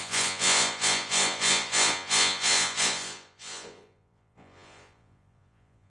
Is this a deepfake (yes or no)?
yes